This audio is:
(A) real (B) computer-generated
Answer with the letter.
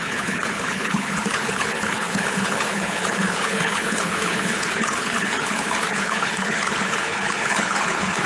B